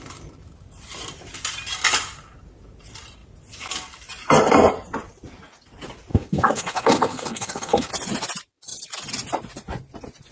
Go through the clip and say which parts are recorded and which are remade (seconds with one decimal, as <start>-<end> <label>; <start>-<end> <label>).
0.0-6.1 recorded; 6.1-7.9 remade; 7.9-10.3 recorded